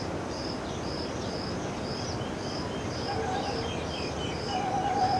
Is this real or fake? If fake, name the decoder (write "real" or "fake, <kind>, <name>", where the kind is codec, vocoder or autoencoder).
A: fake, vocoder, BigVGAN v2